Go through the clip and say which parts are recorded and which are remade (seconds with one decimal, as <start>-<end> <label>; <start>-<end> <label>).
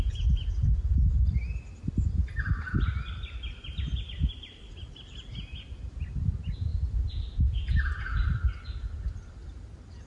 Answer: 0.0-10.1 recorded